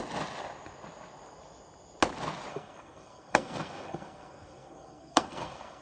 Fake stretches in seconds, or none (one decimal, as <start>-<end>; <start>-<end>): 2.5-5.8